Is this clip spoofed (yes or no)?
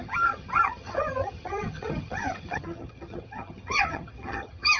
yes